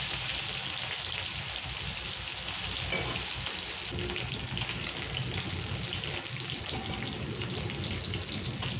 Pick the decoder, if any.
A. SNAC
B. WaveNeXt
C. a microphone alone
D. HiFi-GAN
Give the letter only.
C